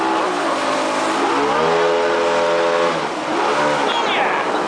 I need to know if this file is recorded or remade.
recorded